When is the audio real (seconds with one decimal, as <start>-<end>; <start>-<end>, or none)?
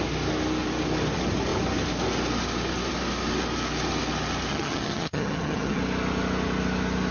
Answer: 0.0-4.5; 5.8-7.1